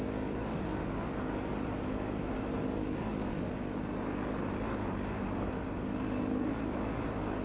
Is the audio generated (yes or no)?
no